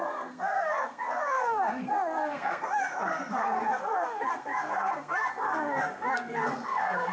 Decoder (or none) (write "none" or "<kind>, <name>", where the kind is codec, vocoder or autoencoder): codec, SNAC